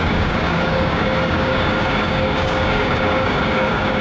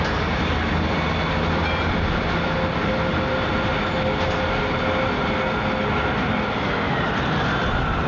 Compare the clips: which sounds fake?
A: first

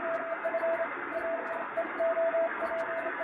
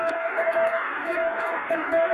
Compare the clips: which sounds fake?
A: second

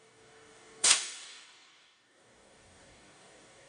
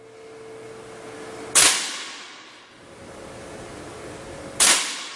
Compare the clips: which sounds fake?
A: first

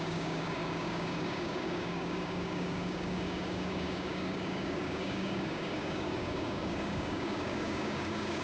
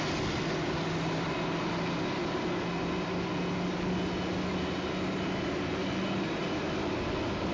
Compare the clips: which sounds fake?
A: first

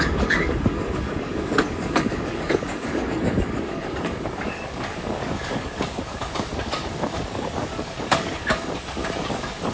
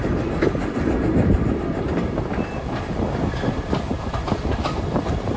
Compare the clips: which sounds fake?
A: first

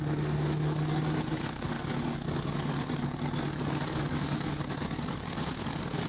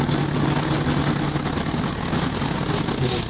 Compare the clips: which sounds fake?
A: first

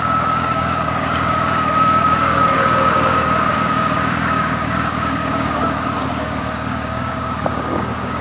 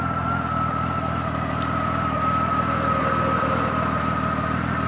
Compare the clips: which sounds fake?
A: first